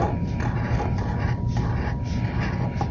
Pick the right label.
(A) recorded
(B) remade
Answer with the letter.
A